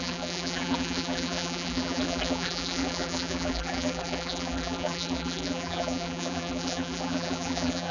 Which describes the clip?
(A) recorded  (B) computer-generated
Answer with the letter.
B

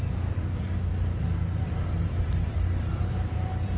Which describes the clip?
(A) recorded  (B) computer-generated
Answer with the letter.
B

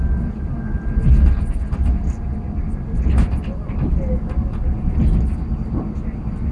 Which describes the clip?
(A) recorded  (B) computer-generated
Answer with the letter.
A